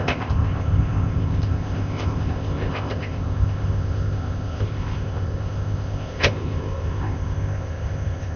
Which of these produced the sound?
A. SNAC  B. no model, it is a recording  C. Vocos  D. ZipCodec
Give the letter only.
D